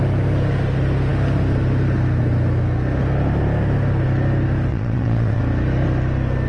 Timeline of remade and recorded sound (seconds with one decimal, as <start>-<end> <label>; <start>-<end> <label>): 0.0-4.7 recorded; 4.7-5.4 remade; 5.4-6.5 recorded